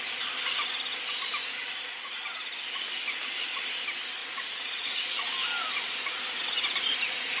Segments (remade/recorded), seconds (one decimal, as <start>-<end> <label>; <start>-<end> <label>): 0.0-1.4 recorded; 1.4-2.2 remade; 2.2-4.2 recorded; 4.2-5.3 remade; 5.3-7.4 recorded